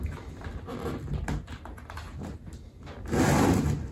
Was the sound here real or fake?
real